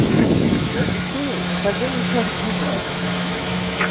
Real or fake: fake